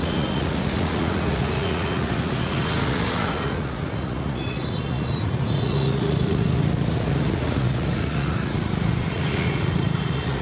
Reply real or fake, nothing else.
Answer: fake